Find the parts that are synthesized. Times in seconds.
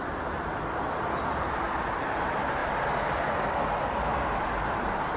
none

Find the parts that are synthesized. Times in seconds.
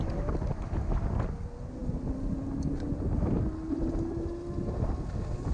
none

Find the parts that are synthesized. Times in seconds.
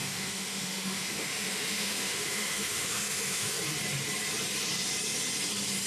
0.0-3.5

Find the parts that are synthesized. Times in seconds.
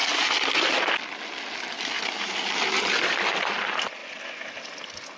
none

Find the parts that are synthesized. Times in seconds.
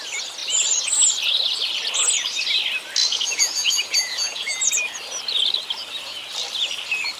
3.0-4.7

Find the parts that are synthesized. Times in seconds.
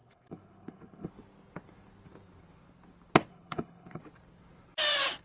0.0-1.1; 3.3-4.0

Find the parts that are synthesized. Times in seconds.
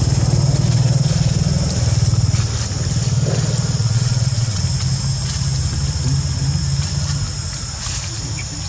3.8-4.6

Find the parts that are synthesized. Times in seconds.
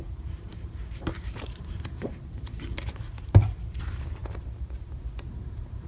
0.0-5.9